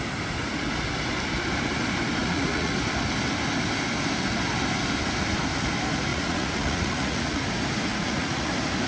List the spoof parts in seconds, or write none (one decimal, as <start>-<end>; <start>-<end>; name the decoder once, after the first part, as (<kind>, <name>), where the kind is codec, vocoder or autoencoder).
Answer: 2.2-2.7 (vocoder, Vocos); 6.1-7.4; 7.9-8.5

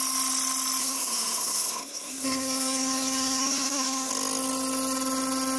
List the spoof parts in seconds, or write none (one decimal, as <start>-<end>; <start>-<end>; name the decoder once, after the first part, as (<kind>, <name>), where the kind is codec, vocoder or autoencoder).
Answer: 0.8-4.1 (codec, SNAC)

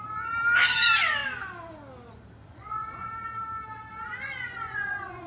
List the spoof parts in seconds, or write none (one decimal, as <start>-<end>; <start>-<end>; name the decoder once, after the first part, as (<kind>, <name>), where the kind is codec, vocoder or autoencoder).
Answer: 2.4-3.1 (vocoder, Vocos); 3.9-5.3

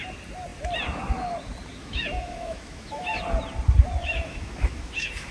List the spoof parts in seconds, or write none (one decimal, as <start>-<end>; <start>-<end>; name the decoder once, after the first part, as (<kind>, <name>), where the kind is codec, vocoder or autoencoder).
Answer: 1.8-3.2 (autoencoder, DAC-VAE); 4.0-5.3

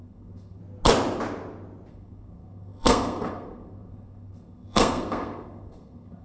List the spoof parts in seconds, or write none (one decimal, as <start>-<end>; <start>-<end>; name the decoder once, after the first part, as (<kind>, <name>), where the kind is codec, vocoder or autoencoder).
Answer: 0.0-0.6 (codec, SNAC); 1.9-6.2

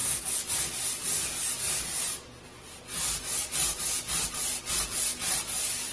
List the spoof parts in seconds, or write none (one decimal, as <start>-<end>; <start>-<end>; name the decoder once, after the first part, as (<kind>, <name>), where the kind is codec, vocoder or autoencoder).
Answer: 0.5-1.0 (vocoder, BigVGAN v2); 3.4-5.9

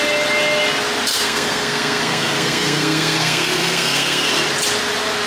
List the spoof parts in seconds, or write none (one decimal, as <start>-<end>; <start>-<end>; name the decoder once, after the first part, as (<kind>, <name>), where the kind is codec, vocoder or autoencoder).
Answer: 1.1-4.3 (codec, SNAC)

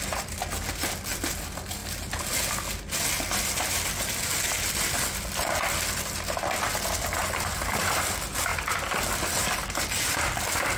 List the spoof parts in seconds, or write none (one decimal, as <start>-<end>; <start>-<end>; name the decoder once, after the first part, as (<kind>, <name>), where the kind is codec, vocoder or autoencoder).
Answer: 7.2-8.0 (vocoder, BigVGAN v2)